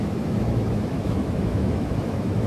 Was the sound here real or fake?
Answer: fake